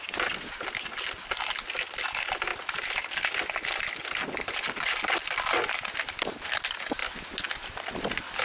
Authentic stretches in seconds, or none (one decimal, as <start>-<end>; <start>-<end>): 0.0-8.4